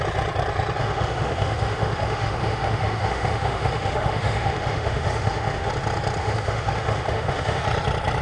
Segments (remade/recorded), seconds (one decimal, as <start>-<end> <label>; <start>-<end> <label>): 0.0-0.8 recorded; 0.8-5.7 remade; 5.7-6.2 recorded; 6.2-7.6 remade; 7.6-8.2 recorded